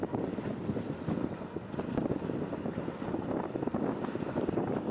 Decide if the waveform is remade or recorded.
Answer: recorded